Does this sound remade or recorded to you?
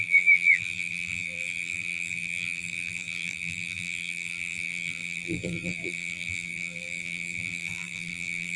remade